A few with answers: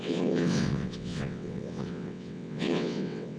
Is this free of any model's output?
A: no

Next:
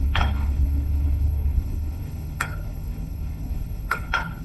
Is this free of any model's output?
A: no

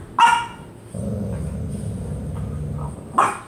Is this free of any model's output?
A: yes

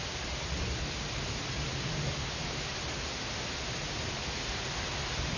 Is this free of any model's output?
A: yes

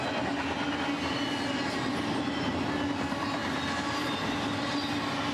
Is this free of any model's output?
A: yes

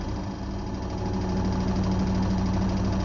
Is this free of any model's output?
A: yes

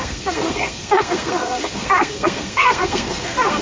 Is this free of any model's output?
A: no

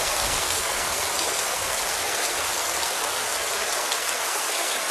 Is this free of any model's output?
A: no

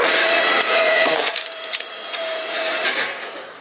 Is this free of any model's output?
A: no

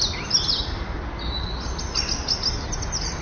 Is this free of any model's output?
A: yes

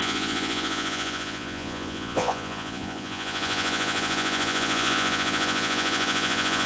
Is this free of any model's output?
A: no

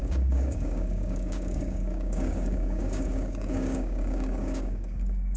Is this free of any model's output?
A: no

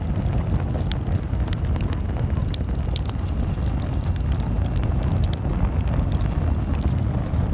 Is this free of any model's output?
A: yes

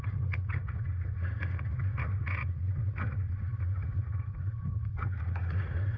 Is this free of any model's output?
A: no